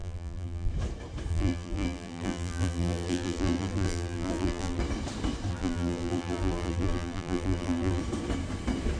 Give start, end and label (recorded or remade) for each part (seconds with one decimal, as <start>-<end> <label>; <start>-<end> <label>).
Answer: 0.0-0.7 remade; 0.7-1.3 recorded; 1.3-4.8 remade; 4.8-5.5 recorded; 5.5-8.0 remade; 8.0-9.0 recorded